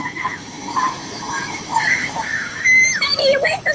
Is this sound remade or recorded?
remade